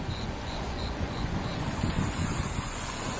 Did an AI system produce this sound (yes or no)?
yes